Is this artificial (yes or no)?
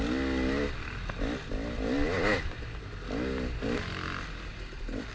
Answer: no